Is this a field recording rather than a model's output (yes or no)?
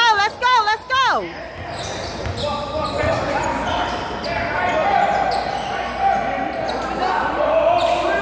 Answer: yes